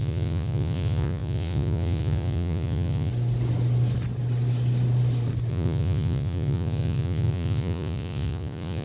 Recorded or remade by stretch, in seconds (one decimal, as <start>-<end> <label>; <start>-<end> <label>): 0.0-3.1 remade; 3.1-5.5 recorded; 5.5-8.8 remade